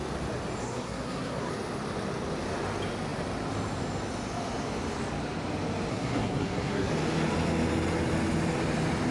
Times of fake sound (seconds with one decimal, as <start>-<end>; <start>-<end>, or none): 0.6-1.5; 5.9-6.9